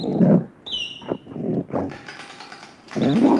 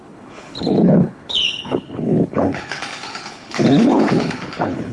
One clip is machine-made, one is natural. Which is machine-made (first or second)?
second